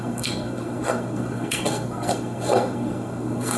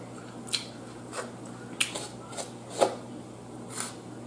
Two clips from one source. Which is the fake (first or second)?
first